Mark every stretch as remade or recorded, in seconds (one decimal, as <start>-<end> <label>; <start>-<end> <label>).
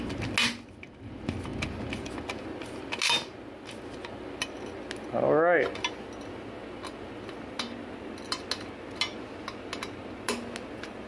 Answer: 0.0-11.1 recorded